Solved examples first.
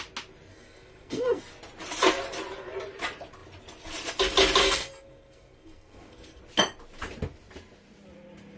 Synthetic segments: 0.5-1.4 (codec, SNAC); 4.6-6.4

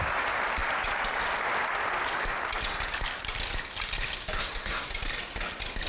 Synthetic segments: 4.4-4.9 (codec, SNAC)

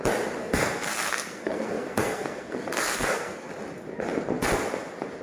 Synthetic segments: 0.4-3.5 (codec, SNAC)